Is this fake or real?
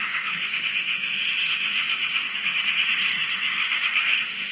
fake